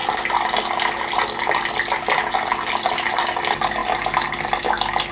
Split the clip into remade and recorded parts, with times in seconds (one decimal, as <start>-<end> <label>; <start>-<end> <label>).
0.0-5.1 recorded